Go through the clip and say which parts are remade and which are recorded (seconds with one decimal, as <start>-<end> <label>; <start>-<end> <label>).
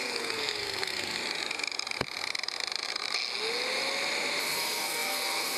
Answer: 0.0-1.2 remade; 1.2-4.4 recorded; 4.4-5.6 remade